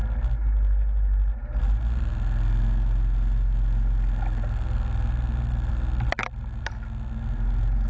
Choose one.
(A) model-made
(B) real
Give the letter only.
B